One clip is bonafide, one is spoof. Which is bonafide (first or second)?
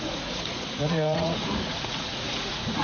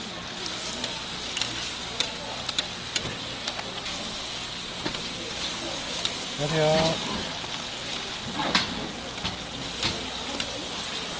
second